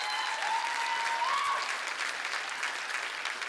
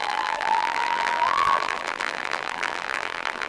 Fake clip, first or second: second